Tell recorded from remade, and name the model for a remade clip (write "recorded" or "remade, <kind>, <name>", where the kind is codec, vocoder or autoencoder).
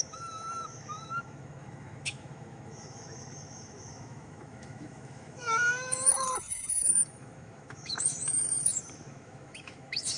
remade, autoencoder, DAC-VAE